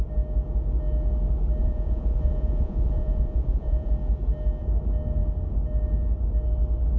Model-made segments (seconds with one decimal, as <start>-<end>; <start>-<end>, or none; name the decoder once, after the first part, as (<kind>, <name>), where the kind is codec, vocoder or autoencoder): 1.6-3.9 (vocoder, Vocos)